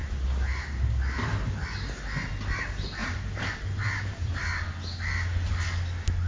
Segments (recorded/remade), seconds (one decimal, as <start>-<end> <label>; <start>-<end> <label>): 0.0-3.0 recorded; 3.0-3.5 remade; 3.5-6.3 recorded